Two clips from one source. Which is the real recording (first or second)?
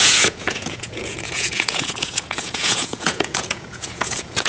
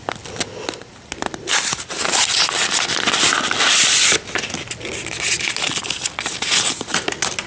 second